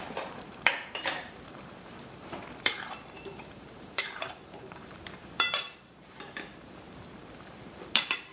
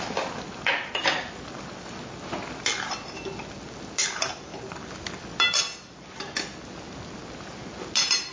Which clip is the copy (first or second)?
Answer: first